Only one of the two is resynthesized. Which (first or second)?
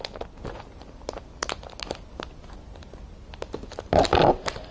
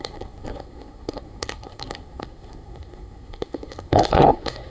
second